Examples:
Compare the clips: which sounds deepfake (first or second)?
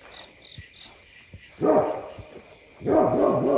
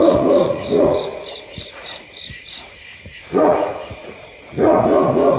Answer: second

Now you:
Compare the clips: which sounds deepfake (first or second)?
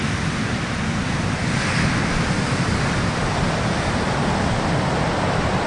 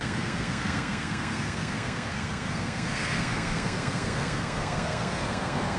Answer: second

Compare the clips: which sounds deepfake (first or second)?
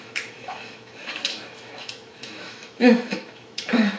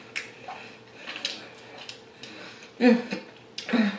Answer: first